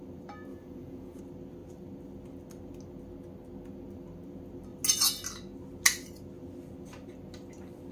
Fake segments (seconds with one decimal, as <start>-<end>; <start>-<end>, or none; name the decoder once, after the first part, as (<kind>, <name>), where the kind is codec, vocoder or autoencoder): 0.5-1.2 (vocoder, Vocos)